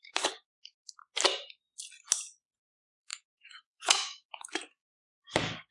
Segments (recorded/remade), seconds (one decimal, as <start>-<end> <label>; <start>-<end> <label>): 0.0-1.0 remade; 1.0-2.6 recorded; 2.6-5.7 remade